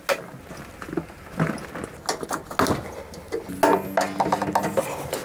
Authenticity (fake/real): real